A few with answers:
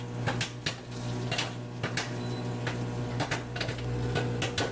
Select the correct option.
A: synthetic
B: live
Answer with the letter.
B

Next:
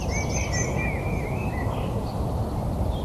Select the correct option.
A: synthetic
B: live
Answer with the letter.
B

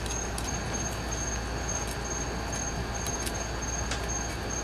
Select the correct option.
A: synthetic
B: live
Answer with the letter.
B